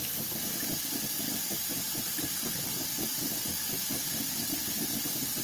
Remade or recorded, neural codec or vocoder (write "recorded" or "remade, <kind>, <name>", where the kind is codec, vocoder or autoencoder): recorded